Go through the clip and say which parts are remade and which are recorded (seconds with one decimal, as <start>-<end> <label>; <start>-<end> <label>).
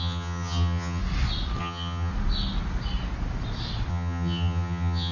0.0-1.0 remade; 1.0-1.6 recorded; 1.6-2.1 remade; 2.1-3.9 recorded; 3.9-5.1 remade